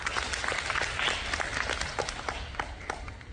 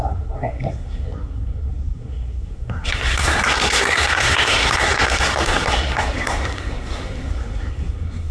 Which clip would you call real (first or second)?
first